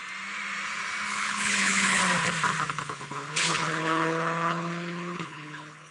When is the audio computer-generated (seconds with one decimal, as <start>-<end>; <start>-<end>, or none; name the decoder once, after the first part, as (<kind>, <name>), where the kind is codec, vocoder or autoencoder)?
1.1-2.0 (codec, HILCodec); 2.7-5.9